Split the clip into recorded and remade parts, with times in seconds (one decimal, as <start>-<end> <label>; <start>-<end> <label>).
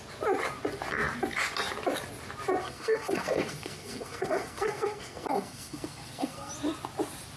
0.0-2.6 recorded; 2.6-6.5 remade; 6.5-7.4 recorded